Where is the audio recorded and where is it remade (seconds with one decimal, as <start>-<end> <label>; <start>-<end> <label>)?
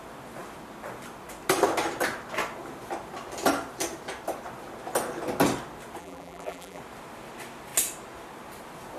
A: 0.0-6.0 recorded; 6.0-6.8 remade; 6.8-9.0 recorded